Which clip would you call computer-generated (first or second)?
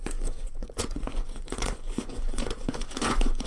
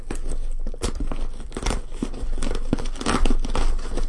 first